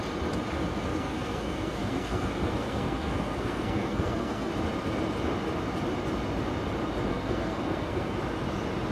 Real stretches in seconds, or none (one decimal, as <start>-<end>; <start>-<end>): 0.0-0.9; 4.5-7.1; 8.2-8.9